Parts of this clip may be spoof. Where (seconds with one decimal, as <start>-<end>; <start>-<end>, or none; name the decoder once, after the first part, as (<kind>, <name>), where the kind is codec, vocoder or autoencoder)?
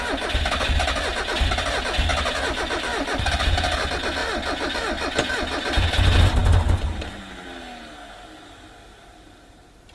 none